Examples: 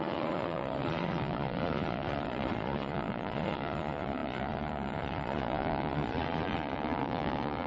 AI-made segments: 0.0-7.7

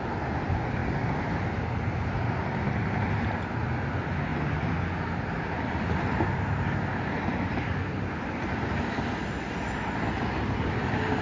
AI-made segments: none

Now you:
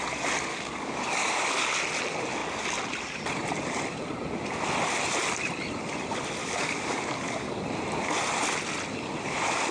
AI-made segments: 0.5-1.6; 6.4-7.6

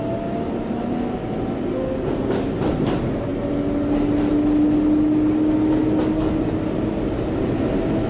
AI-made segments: none

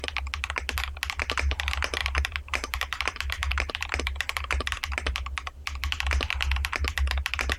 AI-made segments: 2.0-3.7

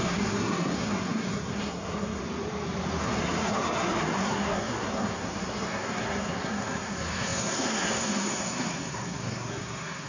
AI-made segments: 0.0-2.2; 3.0-10.1

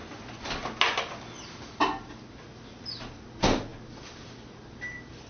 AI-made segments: none